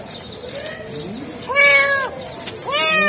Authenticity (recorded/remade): recorded